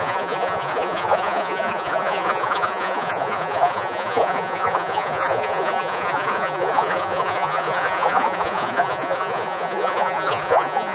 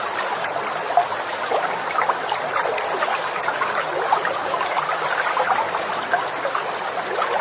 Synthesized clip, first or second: first